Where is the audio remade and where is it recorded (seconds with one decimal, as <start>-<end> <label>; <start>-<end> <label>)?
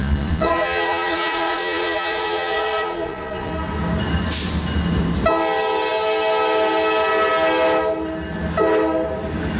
0.0-3.5 remade; 3.5-9.6 recorded